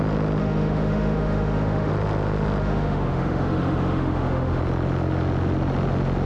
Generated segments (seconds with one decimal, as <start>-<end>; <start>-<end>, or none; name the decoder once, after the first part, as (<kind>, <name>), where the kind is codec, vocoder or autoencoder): 0.4-1.9 (autoencoder, DAC-VAE); 2.6-4.6